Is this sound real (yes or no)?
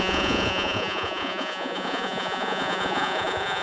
no